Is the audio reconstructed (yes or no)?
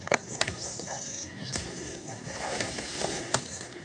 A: yes